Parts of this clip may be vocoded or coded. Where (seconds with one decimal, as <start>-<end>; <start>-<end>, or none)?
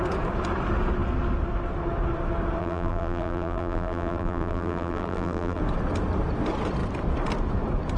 2.6-5.6